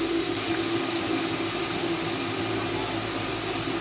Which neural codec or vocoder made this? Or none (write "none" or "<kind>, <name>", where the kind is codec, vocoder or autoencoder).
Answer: none